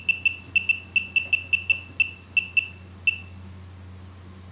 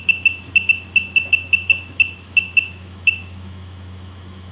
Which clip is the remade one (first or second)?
second